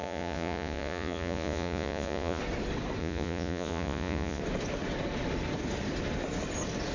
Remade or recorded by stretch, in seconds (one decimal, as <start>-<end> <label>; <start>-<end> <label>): 0.0-2.4 remade; 2.4-3.0 recorded; 3.0-4.4 remade; 4.4-6.9 recorded